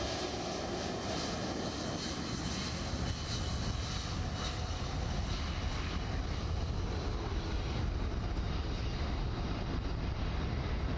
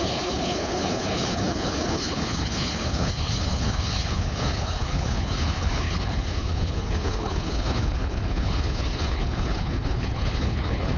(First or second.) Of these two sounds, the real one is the first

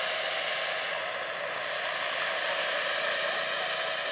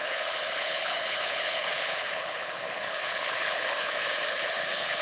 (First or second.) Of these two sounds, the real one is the first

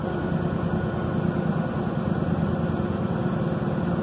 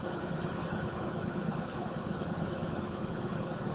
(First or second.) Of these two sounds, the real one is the first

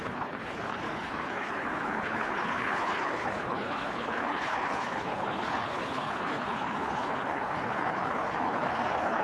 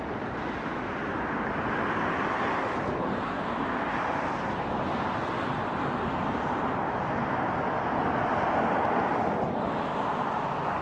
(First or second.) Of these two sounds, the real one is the second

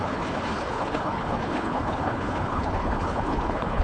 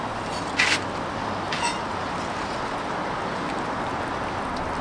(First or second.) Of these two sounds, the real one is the second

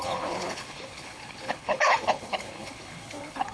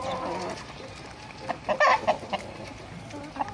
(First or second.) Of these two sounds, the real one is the second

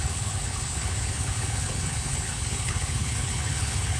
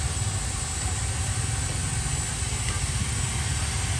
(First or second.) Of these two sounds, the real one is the second